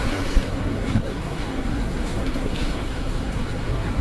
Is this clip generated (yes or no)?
yes